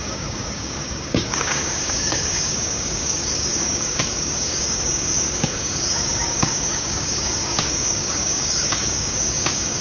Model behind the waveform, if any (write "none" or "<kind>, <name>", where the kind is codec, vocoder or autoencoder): codec, DAC